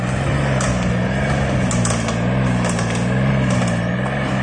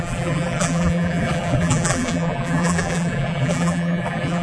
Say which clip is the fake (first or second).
second